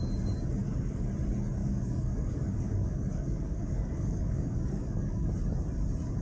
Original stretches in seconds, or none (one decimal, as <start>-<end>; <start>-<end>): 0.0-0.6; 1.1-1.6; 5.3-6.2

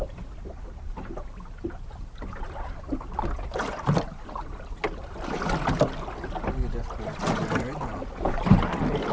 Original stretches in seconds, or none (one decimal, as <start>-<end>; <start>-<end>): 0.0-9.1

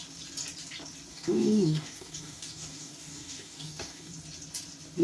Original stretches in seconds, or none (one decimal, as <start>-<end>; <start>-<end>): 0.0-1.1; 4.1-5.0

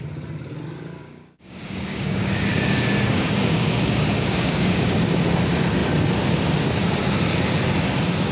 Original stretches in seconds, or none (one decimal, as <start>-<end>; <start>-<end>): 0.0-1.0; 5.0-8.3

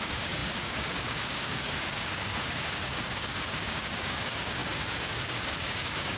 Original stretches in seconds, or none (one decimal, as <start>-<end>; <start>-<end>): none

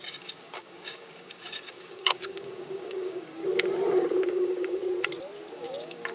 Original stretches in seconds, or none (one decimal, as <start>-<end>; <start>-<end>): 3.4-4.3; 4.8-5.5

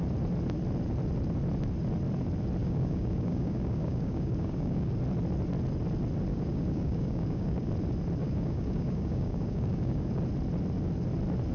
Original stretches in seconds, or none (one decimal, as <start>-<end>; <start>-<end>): 0.0-2.6; 4.9-6.3; 7.7-8.2; 10.2-11.5

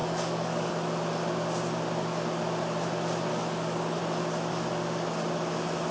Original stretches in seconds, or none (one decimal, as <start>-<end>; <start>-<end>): 0.7-3.3; 4.0-5.9